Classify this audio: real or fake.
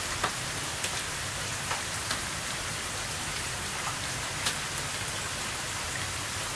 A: real